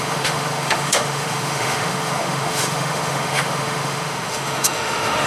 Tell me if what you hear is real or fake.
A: fake